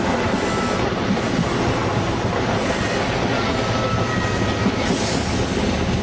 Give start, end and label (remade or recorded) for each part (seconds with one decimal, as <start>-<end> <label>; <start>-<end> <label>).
0.0-6.0 recorded